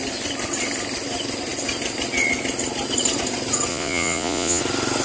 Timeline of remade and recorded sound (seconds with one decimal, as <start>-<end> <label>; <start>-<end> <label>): 0.0-3.7 recorded; 3.7-4.6 remade; 4.6-5.0 recorded